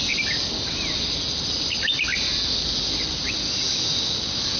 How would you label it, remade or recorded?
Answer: recorded